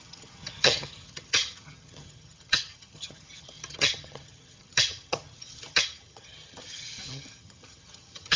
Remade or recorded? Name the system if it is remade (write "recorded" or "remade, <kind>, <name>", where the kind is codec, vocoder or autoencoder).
remade, vocoder, HiFi-GAN